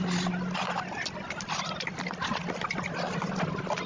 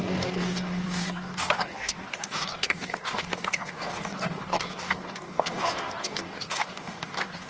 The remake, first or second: second